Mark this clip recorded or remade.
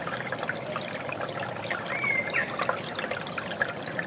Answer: recorded